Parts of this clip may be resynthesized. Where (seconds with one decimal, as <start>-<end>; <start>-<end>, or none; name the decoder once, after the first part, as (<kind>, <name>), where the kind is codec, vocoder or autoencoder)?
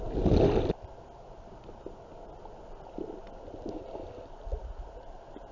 none